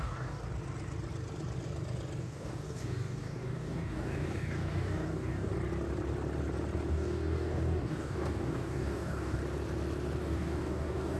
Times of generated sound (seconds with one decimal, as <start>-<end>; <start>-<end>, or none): 0.0-0.4; 2.2-5.5; 6.9-9.4; 10.2-11.2